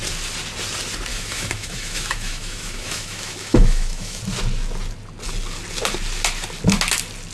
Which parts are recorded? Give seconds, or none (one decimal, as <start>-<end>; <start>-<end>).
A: 0.0-1.1; 4.2-7.3